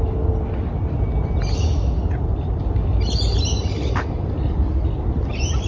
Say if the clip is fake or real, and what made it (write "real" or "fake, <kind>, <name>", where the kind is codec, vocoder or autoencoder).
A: real